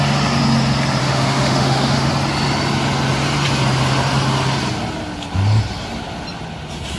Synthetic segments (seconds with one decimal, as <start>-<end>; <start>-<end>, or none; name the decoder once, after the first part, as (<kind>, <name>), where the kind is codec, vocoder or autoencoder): 1.0-2.1 (autoencoder, DAC-VAE)